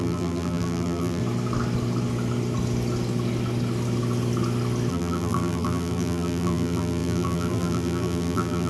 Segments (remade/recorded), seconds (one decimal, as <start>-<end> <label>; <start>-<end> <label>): 0.0-1.2 remade; 1.2-4.9 recorded; 4.9-8.7 remade